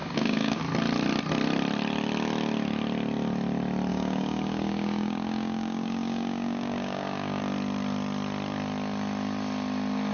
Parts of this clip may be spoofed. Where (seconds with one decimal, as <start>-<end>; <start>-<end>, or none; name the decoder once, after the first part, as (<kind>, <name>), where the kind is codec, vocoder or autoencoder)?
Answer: 0.0-0.6 (codec, DAC); 3.9-7.4